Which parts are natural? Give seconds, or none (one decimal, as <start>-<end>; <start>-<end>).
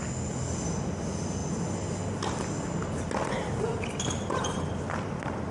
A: 0.0-5.5